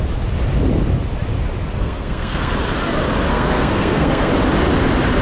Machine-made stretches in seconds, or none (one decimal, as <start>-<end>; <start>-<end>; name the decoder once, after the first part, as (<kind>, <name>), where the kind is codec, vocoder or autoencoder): 1.8-2.5 (codec, SNAC); 3.3-4.3